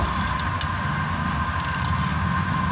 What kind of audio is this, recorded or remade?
recorded